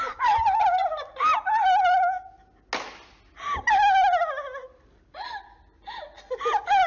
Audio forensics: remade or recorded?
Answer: recorded